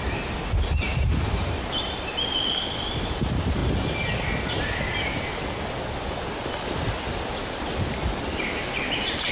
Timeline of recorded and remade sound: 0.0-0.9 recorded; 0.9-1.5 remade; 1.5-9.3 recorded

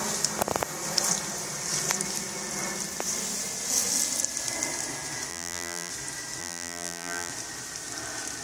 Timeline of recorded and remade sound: 0.0-5.3 recorded; 5.3-5.9 remade; 5.9-6.4 recorded; 6.4-7.3 remade; 7.3-8.4 recorded

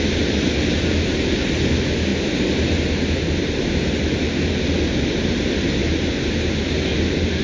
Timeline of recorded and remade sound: 0.0-2.1 recorded; 2.1-3.9 remade; 3.9-5.8 recorded; 5.8-6.7 remade; 6.7-7.4 recorded

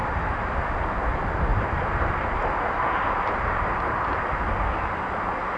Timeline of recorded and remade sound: 0.0-0.5 remade; 0.5-1.5 recorded; 1.5-4.2 remade; 4.2-5.6 recorded

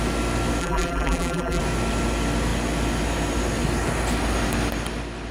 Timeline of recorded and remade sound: 0.0-0.6 recorded; 0.6-1.6 remade; 1.6-5.3 recorded

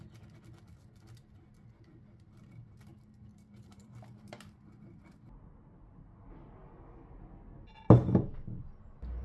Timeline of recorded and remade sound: 0.0-2.9 recorded; 2.9-4.7 remade; 4.7-9.2 recorded

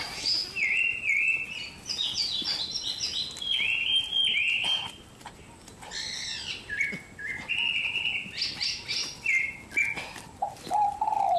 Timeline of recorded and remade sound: 0.0-11.4 recorded